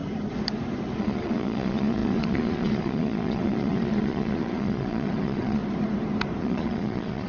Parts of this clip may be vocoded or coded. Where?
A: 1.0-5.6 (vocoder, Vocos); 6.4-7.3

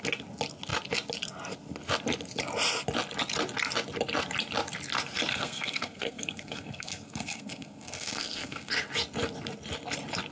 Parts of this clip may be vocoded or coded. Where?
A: 5.3-8.7 (codec, SNAC)

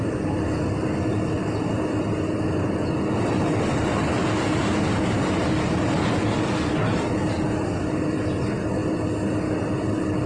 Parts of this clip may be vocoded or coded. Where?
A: none

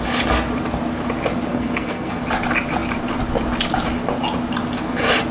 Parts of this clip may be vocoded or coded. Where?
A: 1.5-2.2 (codec, SNAC)

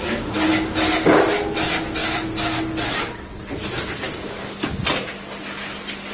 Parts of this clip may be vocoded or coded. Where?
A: none

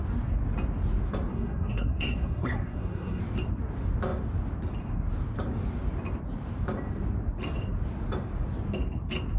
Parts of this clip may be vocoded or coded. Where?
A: 1.3-3.2 (codec, SNAC)